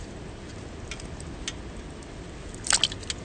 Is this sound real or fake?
real